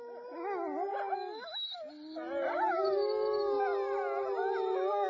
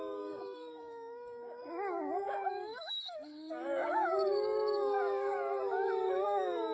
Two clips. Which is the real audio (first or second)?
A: first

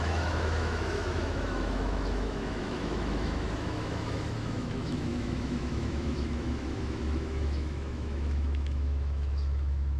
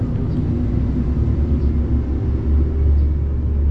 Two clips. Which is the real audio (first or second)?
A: second